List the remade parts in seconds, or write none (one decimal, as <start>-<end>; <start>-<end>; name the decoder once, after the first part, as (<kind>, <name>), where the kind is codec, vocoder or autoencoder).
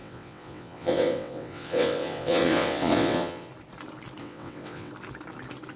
0.0-3.5 (vocoder, WaveNeXt); 4.2-4.9